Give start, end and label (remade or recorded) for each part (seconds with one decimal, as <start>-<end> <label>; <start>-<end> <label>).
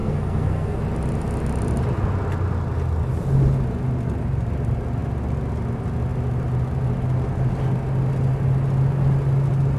0.0-0.8 remade; 0.8-9.8 recorded